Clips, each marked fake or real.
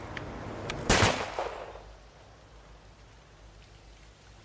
real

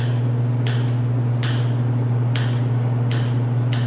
fake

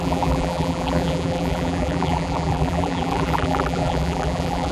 fake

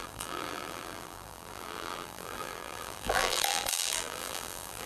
fake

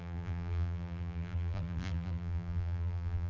fake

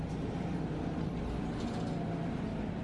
real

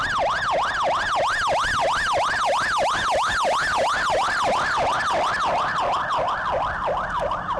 real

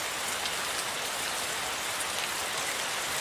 real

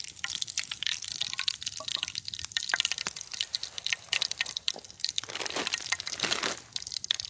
real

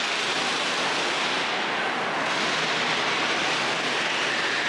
real